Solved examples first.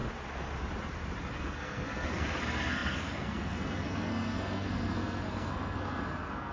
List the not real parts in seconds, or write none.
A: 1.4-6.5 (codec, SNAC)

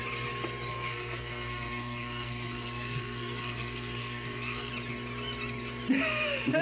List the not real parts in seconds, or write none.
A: 0.7-4.7 (codec, SNAC)

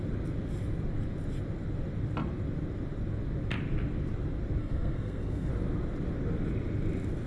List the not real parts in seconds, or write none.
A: 4.6-5.5 (codec, SNAC)

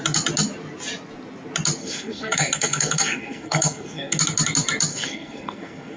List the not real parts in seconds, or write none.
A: 1.8-4.2 (codec, SNAC); 4.9-6.0

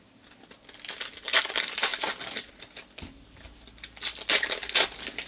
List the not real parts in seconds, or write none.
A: none

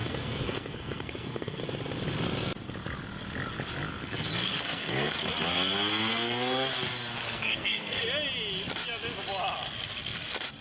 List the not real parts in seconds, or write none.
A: 0.0-1.6 (codec, SNAC); 4.0-5.1; 6.1-6.7; 7.2-8.0

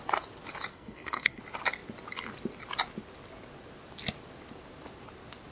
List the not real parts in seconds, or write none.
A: 0.7-1.4 (codec, SNAC)